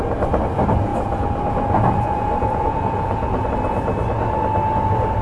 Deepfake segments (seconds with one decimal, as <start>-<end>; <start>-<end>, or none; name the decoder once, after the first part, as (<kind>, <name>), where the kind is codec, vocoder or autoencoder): 0.9-3.5 (vocoder, Vocos)